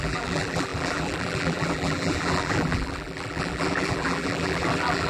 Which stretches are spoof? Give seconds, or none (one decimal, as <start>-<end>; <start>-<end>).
0.0-5.1